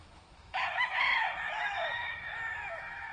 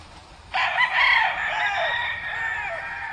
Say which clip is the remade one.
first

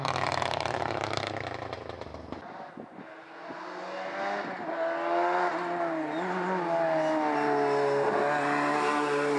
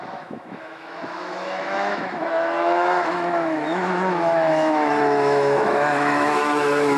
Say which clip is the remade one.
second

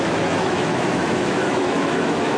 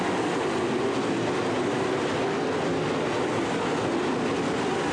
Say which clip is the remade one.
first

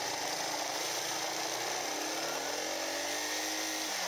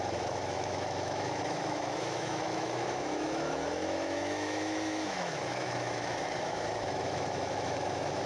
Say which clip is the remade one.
second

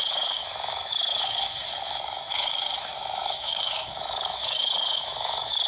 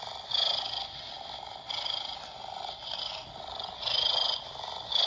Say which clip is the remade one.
first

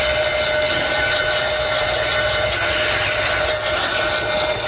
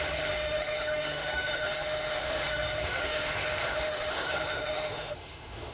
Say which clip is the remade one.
second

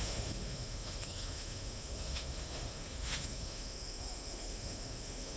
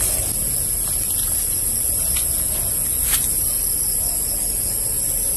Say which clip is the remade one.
first